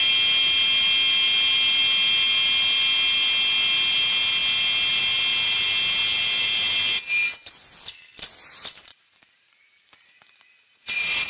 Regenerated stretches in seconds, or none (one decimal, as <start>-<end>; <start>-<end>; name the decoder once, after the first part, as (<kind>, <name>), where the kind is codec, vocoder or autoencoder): 8.9-11.3 (vocoder, Vocos)

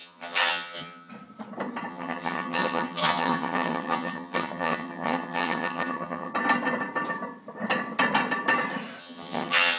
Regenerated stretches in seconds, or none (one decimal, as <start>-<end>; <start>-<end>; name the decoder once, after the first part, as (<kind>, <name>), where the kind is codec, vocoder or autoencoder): 0.0-1.1 (vocoder, HiFi-GAN); 1.9-6.3; 9.0-9.8

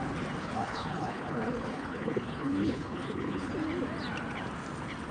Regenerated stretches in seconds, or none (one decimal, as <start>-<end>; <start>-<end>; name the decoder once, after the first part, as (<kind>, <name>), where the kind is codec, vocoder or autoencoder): 0.4-3.5 (codec, HILCodec)

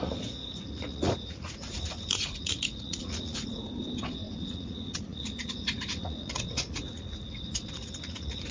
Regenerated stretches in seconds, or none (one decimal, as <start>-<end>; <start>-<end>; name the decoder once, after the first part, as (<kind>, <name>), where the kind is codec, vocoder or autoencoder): 0.0-3.6 (vocoder, Vocos); 4.5-8.5

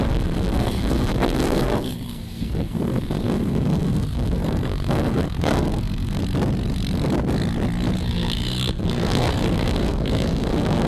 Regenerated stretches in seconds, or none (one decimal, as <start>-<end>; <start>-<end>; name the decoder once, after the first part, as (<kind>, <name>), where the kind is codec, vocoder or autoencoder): 0.0-6.2 (codec, SNAC); 8.0-10.9

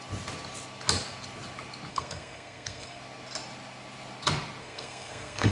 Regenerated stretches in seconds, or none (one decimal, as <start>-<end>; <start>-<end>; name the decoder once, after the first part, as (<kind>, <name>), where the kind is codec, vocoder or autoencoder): 1.9-3.0 (codec, SNAC); 4.6-5.5

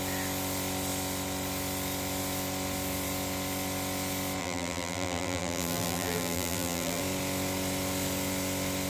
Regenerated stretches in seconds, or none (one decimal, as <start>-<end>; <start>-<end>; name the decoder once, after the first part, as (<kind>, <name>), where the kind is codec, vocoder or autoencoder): 4.4-7.0 (vocoder, BigVGAN v2)